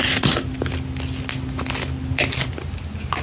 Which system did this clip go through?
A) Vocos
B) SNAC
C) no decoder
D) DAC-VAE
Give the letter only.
C